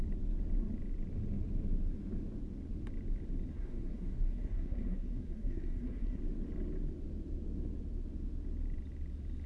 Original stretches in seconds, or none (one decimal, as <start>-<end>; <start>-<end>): 0.0-3.5; 6.2-9.5